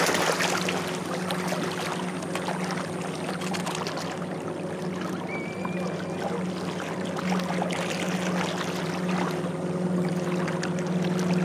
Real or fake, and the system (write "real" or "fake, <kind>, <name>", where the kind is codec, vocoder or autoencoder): real